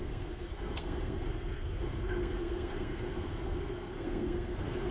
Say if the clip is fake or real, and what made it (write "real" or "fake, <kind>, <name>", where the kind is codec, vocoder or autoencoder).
fake, codec, SNAC